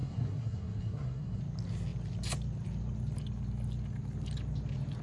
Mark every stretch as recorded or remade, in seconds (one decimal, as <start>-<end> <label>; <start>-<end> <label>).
0.0-1.4 remade; 1.4-5.0 recorded